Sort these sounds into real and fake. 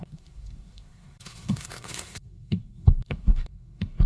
fake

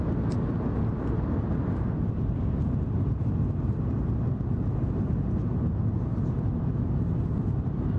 real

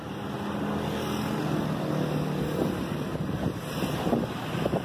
real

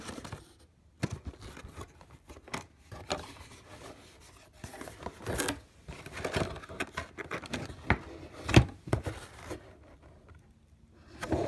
real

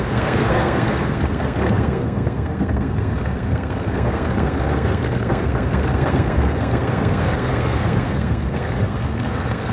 fake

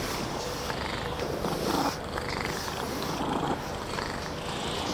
real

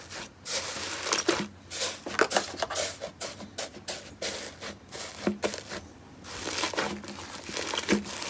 real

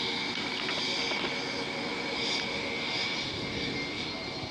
real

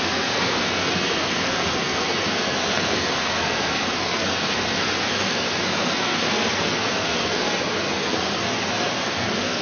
fake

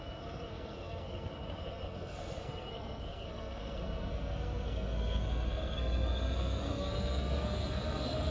fake